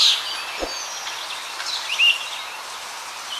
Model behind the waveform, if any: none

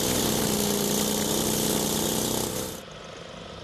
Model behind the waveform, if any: none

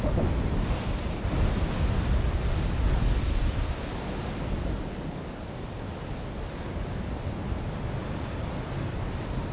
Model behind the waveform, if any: none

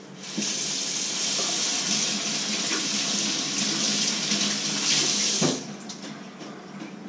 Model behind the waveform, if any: none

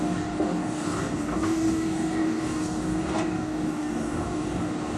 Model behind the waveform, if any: codec, DAC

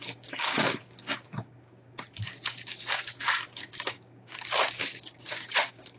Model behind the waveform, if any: codec, DAC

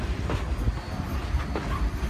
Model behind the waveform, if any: none